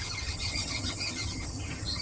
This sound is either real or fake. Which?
fake